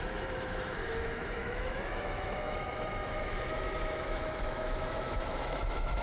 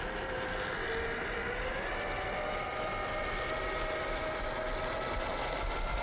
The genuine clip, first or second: second